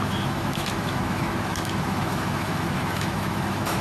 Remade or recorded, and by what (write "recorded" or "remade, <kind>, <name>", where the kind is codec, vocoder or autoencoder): remade, autoencoder, DAC-VAE